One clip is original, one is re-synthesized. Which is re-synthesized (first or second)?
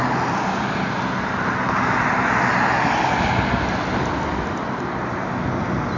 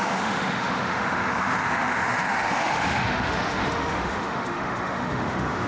second